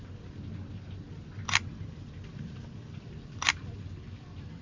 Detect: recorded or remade recorded